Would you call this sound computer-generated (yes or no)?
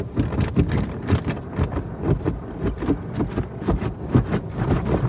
no